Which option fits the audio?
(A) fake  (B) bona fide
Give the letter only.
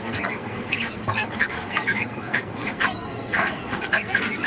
A